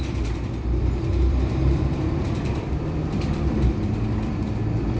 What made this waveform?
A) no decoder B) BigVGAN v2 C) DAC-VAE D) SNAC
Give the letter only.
B